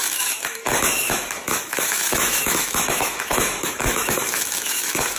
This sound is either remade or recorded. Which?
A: remade